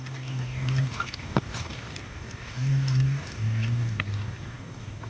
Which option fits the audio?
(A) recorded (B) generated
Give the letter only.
B